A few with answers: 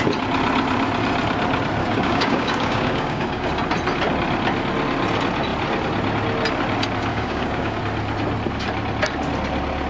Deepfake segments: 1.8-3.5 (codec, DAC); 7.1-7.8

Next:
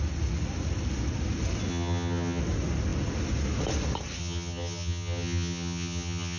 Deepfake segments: 1.7-2.4 (vocoder, HiFi-GAN); 4.2-6.4

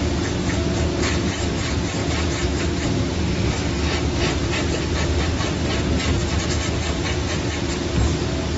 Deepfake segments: 2.0-2.6 (vocoder, BigVGAN v2); 4.4-6.4